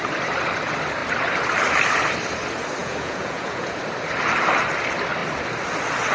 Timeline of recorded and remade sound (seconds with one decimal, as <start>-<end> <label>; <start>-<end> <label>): 0.0-2.8 recorded; 2.8-3.8 remade; 3.8-6.1 recorded